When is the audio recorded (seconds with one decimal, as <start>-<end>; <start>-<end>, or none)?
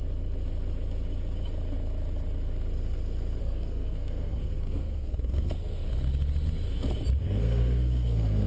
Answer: 0.0-3.4; 5.9-7.2